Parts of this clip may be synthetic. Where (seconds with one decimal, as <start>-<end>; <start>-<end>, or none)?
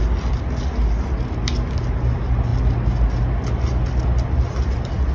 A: none